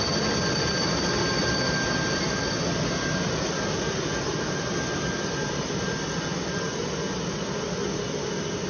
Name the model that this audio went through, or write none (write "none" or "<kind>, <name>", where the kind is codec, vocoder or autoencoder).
none